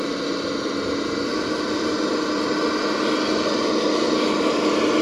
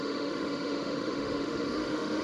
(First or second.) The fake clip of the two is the second